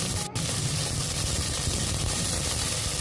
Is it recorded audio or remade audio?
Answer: recorded